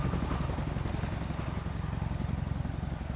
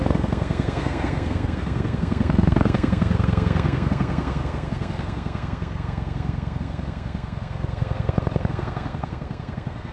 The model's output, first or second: second